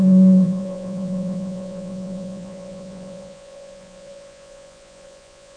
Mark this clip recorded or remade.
remade